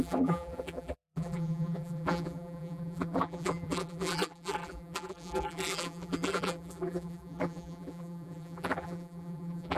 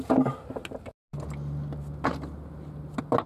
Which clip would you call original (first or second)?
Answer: second